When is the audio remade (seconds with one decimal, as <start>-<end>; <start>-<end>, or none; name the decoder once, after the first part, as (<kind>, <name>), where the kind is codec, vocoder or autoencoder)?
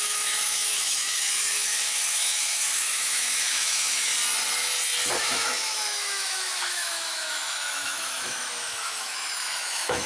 0.0-4.1 (autoencoder, DAC-VAE); 5.2-10.1